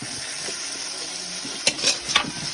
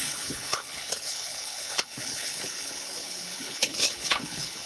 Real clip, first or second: first